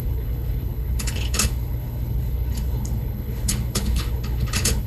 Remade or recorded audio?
remade